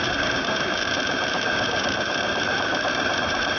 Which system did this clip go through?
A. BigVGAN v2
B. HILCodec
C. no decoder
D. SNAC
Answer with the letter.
A